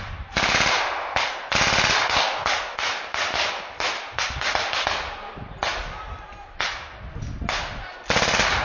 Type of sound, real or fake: real